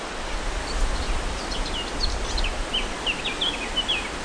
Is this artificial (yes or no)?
no